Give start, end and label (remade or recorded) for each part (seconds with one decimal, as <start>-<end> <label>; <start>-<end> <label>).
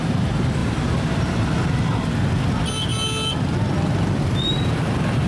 0.0-0.6 recorded; 0.6-1.5 remade; 1.5-5.3 recorded